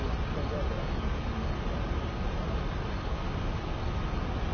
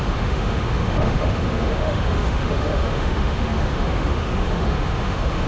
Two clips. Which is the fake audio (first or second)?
second